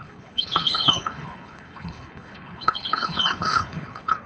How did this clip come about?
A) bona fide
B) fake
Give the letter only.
B